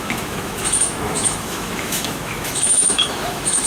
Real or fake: fake